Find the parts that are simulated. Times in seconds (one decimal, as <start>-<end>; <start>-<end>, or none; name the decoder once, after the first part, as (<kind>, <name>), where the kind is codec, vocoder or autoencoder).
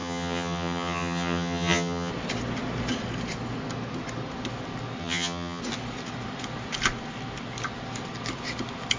0.0-2.1 (vocoder, HiFi-GAN); 5.0-5.6